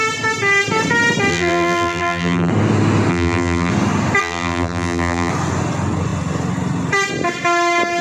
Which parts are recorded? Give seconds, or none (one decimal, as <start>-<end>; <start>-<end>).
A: 0.0-1.3; 2.5-3.1; 3.7-4.2; 5.3-8.0